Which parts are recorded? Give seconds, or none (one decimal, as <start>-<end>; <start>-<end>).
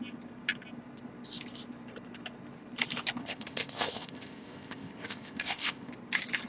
0.0-3.2; 5.9-6.5